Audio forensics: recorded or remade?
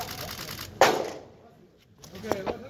recorded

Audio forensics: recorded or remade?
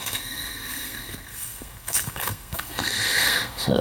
remade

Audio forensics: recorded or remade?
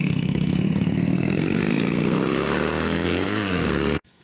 remade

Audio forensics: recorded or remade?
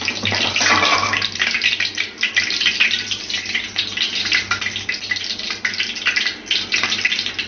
recorded